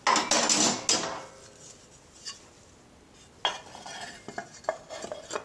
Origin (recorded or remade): recorded